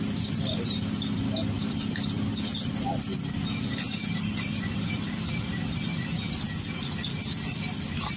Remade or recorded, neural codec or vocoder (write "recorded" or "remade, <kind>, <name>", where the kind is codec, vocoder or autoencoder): recorded